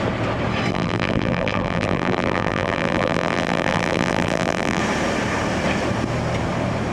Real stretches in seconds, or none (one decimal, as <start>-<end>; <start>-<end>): 0.0-0.7; 4.8-6.9